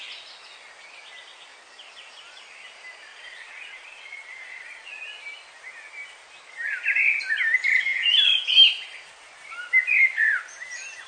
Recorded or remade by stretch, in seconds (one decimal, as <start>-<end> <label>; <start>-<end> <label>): 0.0-3.1 recorded; 3.1-4.9 remade; 4.9-11.1 recorded